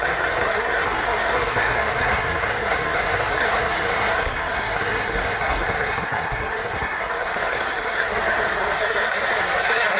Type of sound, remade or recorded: remade